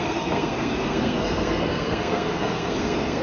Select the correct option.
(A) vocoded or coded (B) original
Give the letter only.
A